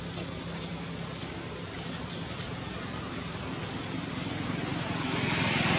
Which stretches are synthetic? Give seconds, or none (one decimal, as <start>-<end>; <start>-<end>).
none